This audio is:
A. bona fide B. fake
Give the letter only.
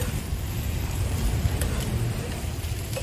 B